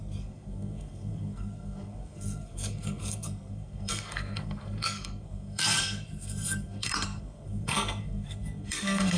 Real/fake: fake